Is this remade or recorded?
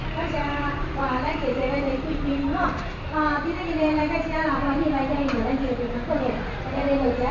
remade